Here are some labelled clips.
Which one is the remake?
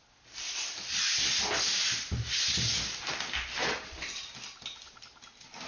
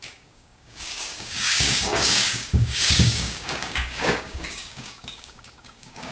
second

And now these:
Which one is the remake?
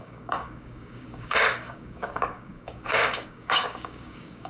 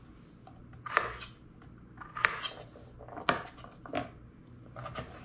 first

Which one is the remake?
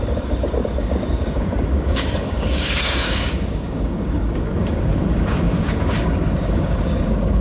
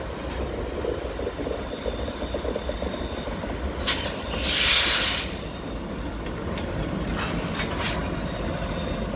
first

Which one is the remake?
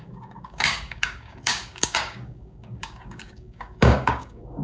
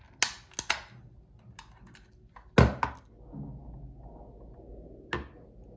first